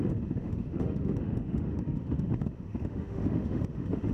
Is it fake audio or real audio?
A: fake